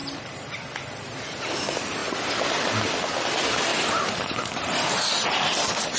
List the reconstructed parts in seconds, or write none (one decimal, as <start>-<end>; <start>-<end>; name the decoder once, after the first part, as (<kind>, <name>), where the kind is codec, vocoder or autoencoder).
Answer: 0.0-1.4 (vocoder, BigVGAN v2); 3.7-5.2